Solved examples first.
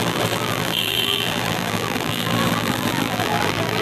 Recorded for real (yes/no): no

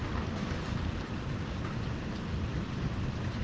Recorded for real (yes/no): yes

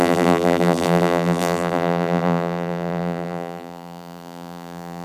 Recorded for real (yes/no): no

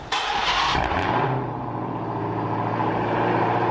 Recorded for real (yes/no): no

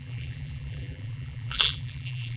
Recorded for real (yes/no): no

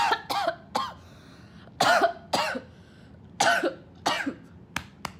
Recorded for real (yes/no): yes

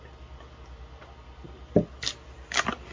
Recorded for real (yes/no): yes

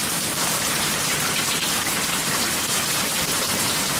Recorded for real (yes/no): no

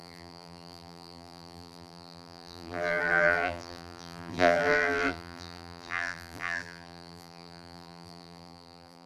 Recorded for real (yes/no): no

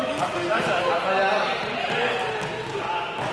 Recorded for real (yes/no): yes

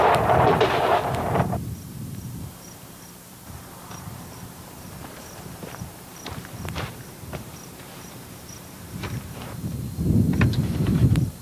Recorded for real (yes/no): no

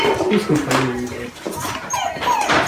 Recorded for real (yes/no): no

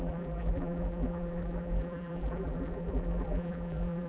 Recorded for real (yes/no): no